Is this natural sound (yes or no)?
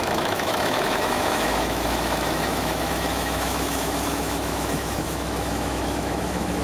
no